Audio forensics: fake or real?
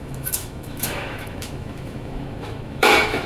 fake